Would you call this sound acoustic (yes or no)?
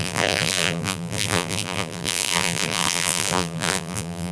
no